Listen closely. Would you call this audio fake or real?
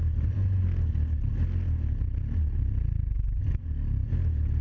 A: real